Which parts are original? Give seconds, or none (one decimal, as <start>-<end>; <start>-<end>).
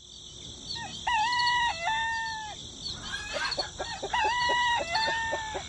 0.0-5.7